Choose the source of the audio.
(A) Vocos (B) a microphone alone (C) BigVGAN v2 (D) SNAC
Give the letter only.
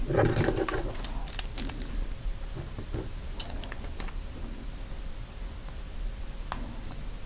B